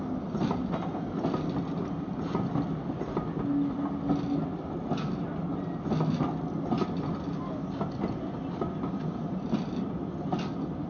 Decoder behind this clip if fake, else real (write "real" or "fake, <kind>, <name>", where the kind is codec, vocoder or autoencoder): real